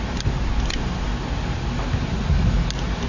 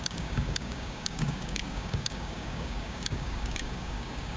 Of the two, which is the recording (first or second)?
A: first